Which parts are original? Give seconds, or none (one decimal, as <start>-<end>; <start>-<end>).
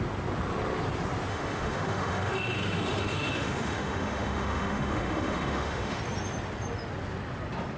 0.0-1.3; 6.0-7.8